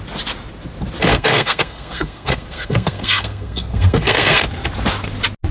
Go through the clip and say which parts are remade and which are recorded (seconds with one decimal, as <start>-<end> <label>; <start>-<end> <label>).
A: 0.0-1.1 recorded; 1.1-4.4 remade; 4.4-5.5 recorded

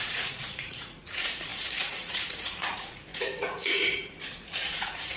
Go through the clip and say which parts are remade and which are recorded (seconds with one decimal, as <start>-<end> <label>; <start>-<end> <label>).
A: 0.0-5.2 remade

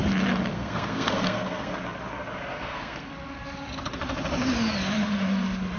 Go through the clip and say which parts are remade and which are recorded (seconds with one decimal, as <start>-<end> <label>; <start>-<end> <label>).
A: 0.0-0.5 recorded; 0.5-1.7 remade; 1.7-2.5 recorded; 2.5-3.1 remade; 3.1-5.8 recorded

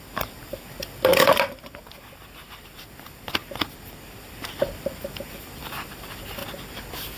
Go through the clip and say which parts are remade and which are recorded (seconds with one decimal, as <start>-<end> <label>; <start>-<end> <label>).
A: 0.0-3.4 remade; 3.4-4.2 recorded; 4.2-6.4 remade; 6.4-7.2 recorded